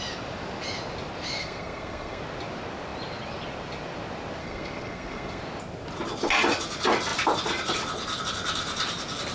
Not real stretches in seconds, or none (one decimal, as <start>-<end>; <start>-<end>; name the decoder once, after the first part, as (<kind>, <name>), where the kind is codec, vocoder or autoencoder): 1.4-2.2 (codec, SNAC); 4.4-5.4